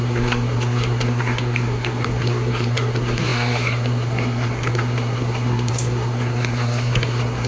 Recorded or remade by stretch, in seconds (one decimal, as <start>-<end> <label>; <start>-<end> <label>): 0.0-7.5 remade

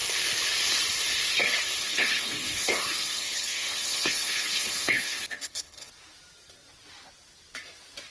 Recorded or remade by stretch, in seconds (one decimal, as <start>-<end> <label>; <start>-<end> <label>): 0.0-1.8 recorded; 1.8-5.9 remade; 5.9-8.1 recorded

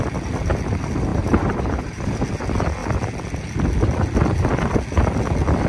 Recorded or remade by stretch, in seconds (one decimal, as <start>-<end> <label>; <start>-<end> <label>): 0.0-1.1 recorded; 1.1-2.2 remade; 2.2-5.7 recorded

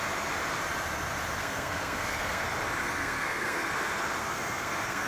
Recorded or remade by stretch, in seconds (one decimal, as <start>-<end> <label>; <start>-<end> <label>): 0.0-1.4 recorded; 1.4-2.4 remade; 2.4-2.8 recorded; 2.8-3.7 remade; 3.7-4.2 recorded; 4.2-5.1 remade

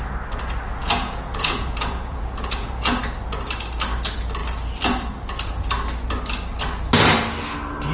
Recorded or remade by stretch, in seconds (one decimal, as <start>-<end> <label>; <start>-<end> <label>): 0.0-0.8 recorded; 0.8-3.0 remade; 3.0-7.9 recorded

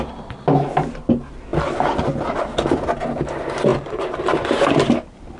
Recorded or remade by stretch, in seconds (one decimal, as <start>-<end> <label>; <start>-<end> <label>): 0.0-3.7 recorded; 3.7-4.7 remade; 4.7-5.4 recorded

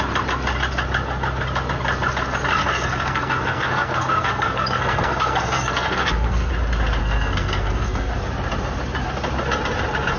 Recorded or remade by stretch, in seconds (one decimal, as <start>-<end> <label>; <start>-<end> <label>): 0.0-2.6 recorded; 2.6-6.5 remade; 6.5-7.0 recorded; 7.0-8.1 remade; 8.1-10.2 recorded

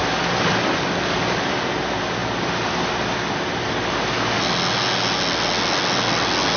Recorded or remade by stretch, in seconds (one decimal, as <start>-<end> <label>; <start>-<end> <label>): 0.0-6.6 recorded